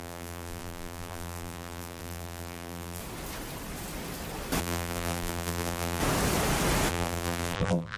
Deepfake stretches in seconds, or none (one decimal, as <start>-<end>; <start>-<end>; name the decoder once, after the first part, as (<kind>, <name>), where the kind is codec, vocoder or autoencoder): 0.0-3.0 (vocoder, BigVGAN v2); 4.6-6.0; 6.9-8.0